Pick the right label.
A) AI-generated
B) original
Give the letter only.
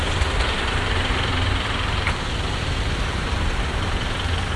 A